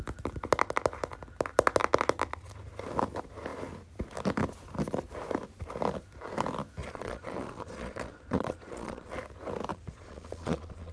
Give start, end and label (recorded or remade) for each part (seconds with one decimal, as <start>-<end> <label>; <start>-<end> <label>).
0.0-6.8 recorded; 6.8-9.1 remade; 9.1-9.7 recorded; 9.7-10.9 remade